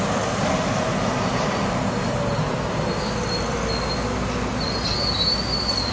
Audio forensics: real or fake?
real